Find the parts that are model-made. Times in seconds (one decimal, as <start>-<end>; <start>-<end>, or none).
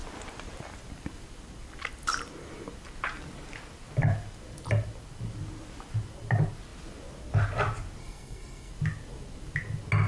8.0-8.7